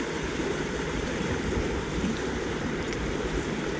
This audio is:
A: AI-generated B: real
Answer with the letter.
A